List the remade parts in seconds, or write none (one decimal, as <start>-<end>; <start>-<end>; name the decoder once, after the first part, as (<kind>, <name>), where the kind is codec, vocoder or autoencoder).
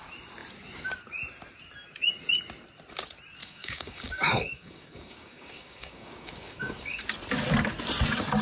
3.4-7.0 (codec, DAC)